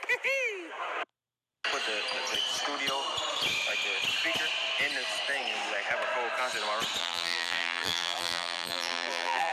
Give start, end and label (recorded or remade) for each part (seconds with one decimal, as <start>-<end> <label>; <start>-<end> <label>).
0.0-7.0 recorded; 7.0-9.5 remade